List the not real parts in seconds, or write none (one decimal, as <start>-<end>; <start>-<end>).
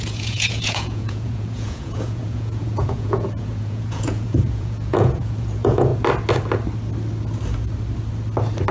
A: 0.0-5.9